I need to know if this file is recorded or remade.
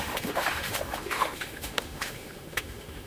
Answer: remade